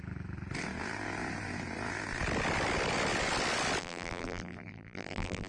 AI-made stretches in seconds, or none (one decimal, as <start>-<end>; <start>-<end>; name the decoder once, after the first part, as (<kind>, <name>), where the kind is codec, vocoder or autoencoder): 3.8-5.5 (vocoder, BigVGAN v2)